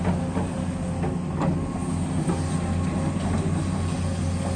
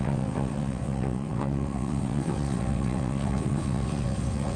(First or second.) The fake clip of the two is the second